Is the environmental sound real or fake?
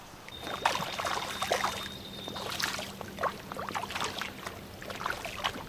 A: real